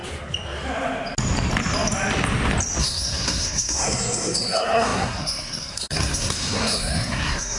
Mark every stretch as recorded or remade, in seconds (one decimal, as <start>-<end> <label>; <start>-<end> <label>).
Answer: 0.0-2.8 recorded; 2.8-7.6 remade